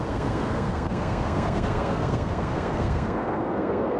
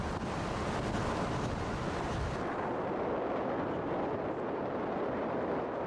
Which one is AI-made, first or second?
first